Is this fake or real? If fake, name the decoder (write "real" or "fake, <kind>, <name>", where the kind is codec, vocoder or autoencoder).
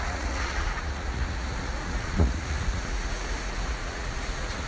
fake, vocoder, Vocos